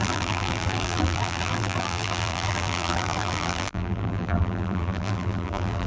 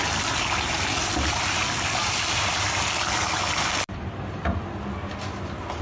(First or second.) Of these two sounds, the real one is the second